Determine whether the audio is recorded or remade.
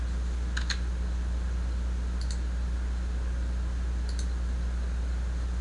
recorded